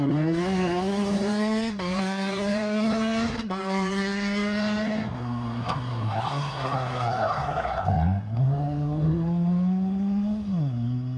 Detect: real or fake fake